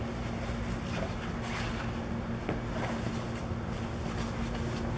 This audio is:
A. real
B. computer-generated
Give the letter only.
A